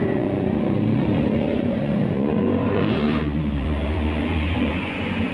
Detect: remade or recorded remade